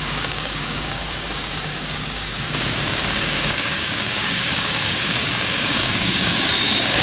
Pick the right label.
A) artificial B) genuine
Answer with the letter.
A